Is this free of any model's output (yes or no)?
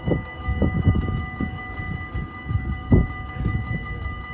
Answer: no